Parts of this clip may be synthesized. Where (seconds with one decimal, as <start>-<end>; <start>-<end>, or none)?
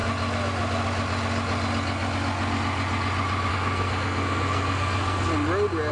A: 3.5-5.3